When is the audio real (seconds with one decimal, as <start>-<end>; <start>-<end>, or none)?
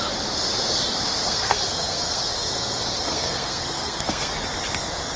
0.0-1.2; 4.3-5.2